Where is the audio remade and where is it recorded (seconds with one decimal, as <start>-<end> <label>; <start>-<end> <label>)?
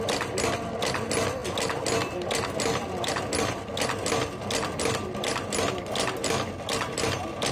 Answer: 0.0-7.5 recorded